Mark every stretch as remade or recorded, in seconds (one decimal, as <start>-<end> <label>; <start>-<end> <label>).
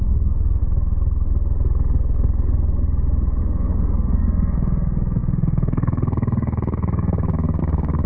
0.0-0.6 remade; 0.6-3.4 recorded; 3.4-8.1 remade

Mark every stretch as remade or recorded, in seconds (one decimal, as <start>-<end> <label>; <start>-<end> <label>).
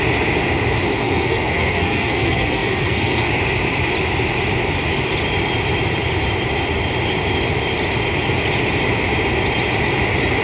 0.0-1.0 recorded; 1.0-3.3 remade; 3.3-10.4 recorded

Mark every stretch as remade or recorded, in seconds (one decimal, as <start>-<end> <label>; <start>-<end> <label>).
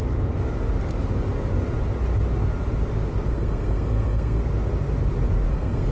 0.0-3.3 recorded; 3.3-4.4 remade; 4.4-5.5 recorded; 5.5-5.9 remade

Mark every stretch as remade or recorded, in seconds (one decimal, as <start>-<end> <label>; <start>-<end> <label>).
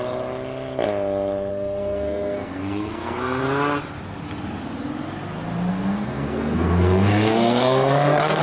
0.0-1.5 recorded; 1.5-3.4 remade; 3.4-5.7 recorded; 5.7-8.4 remade